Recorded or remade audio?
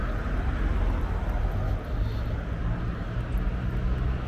recorded